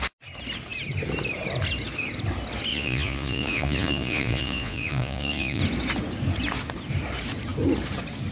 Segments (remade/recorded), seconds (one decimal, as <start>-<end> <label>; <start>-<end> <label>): 0.0-2.7 recorded; 2.7-5.6 remade; 5.6-8.3 recorded